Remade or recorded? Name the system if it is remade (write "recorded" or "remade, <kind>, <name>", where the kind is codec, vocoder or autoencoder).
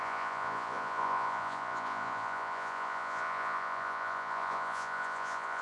remade, vocoder, Vocos